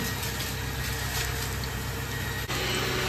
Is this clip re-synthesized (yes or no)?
no